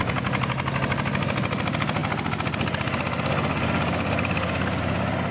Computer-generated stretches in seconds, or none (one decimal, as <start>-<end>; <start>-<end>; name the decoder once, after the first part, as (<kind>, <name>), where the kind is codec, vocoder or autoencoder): none